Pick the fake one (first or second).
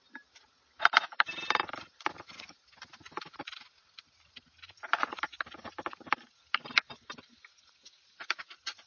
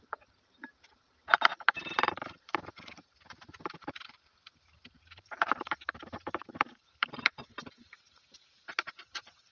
second